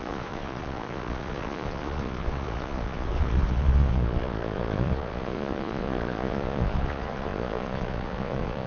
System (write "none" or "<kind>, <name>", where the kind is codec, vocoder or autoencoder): vocoder, Vocos